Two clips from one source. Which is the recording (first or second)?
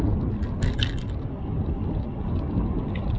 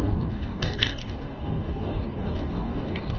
first